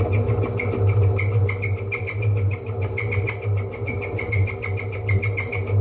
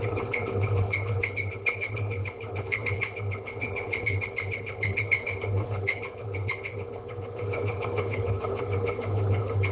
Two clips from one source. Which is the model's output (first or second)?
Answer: second